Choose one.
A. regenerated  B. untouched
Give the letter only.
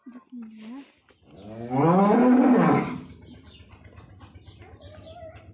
B